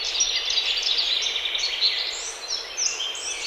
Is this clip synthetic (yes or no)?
no